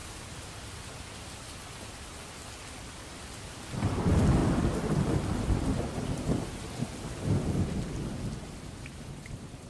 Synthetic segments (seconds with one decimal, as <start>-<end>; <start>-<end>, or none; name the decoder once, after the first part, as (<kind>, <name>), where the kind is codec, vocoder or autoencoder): none

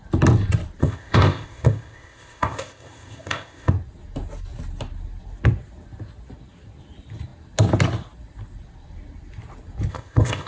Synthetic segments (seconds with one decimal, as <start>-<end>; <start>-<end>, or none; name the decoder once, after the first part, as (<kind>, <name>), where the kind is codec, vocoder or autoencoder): 0.8-3.7 (codec, ZipCodec); 9.9-10.5

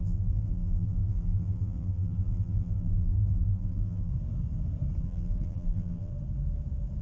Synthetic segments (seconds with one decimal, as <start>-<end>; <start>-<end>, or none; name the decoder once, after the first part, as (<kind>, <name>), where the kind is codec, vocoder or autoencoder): 0.0-4.1 (vocoder, BigVGAN v2); 5.0-6.1

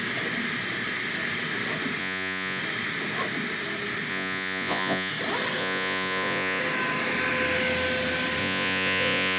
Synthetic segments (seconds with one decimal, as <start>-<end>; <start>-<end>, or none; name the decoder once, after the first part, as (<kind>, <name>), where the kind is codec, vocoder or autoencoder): 2.0-2.6 (vocoder, Vocos); 4.1-5.1; 5.6-6.6; 8.4-9.4